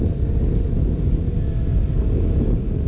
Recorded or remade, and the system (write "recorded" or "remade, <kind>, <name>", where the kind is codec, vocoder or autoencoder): recorded